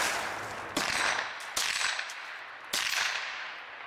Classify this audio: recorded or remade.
recorded